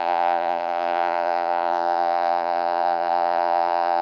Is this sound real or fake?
fake